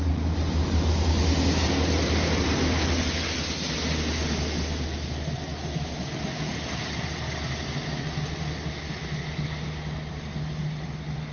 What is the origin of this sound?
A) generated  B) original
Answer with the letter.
B